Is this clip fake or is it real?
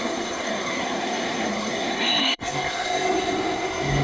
fake